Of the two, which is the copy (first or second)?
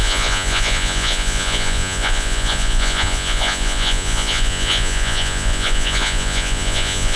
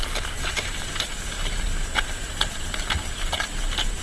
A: first